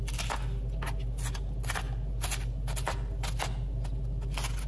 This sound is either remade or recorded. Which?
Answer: recorded